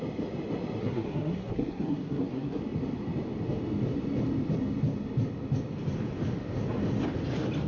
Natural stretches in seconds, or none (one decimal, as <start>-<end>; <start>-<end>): 0.0-0.8; 2.6-7.7